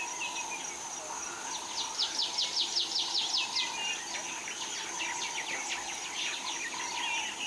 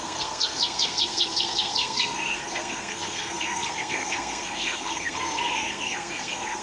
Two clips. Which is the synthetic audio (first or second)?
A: second